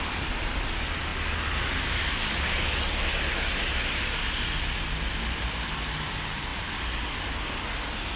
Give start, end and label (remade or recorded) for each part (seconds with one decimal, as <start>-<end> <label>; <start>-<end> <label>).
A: 0.0-8.2 recorded